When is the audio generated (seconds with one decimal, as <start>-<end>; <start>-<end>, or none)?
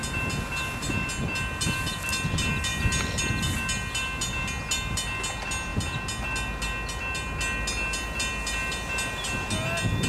none